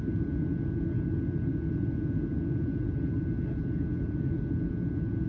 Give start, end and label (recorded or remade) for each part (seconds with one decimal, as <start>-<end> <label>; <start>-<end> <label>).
0.0-5.3 recorded